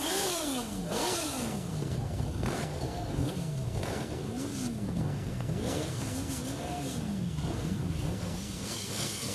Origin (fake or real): fake